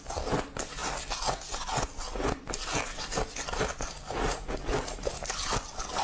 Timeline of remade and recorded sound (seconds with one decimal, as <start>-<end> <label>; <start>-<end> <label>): 0.0-6.0 recorded